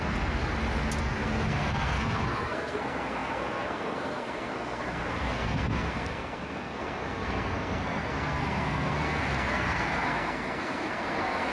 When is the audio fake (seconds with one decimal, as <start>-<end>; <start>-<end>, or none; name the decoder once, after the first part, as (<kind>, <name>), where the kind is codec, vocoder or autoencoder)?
0.0-0.4 (codec, SNAC); 1.0-11.5